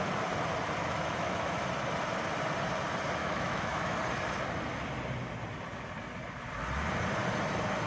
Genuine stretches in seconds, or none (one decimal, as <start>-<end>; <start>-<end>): 0.0-0.8; 1.6-3.2; 4.0-7.9